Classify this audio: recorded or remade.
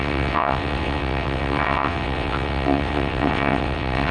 remade